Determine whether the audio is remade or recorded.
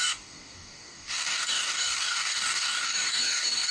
remade